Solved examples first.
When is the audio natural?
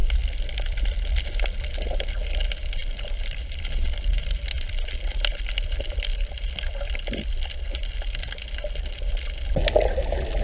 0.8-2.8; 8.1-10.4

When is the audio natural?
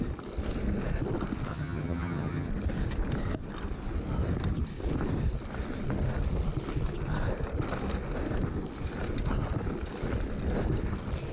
0.0-1.5; 2.5-11.3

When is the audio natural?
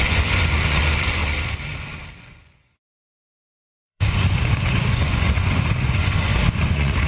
1.2-2.1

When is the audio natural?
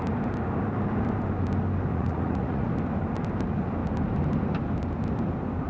0.0-1.9; 2.7-5.7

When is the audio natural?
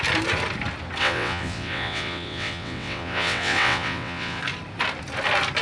0.0-1.0; 4.4-5.6